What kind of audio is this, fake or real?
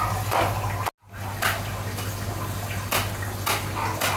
real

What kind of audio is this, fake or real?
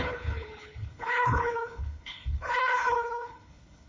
fake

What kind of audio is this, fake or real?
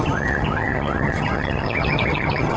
fake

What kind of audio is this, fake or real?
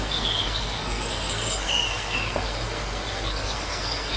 fake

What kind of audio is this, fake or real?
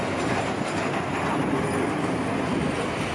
real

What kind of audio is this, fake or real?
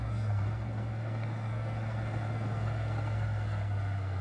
fake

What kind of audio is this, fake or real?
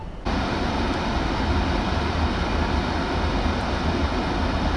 real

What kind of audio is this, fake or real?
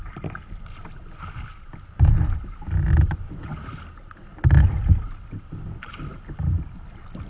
real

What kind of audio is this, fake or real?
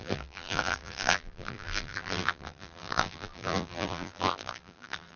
fake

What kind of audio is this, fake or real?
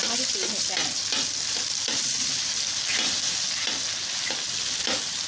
real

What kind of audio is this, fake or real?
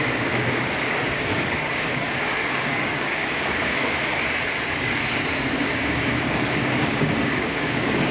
fake